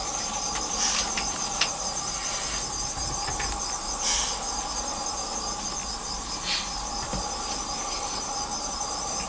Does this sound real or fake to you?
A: real